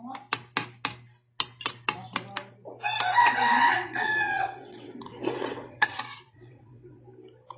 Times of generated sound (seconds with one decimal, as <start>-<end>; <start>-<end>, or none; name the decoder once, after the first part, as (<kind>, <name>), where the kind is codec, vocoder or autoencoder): 3.2-7.0 (vocoder, WaveNeXt)